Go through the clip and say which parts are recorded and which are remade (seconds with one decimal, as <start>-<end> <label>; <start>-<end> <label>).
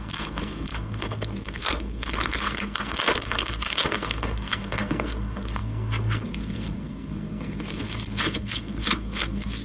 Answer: 0.0-9.6 remade